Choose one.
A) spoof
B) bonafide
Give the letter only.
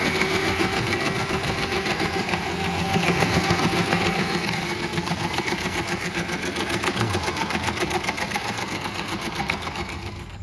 A